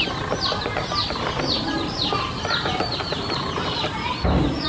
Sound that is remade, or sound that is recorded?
recorded